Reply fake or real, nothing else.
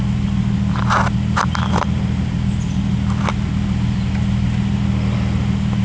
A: real